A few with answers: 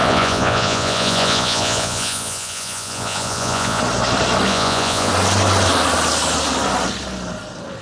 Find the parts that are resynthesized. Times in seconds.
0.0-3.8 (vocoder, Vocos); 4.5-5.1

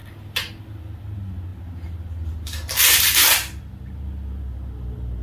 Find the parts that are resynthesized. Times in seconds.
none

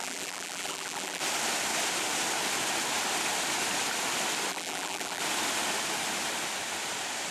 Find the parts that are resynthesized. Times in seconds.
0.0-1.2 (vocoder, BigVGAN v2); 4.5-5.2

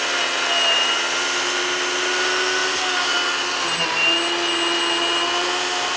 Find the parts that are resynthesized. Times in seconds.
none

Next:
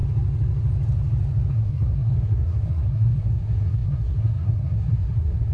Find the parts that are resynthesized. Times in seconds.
1.5-5.5 (codec, SNAC)